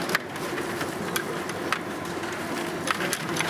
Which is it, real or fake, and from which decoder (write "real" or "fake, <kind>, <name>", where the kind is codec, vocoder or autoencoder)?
real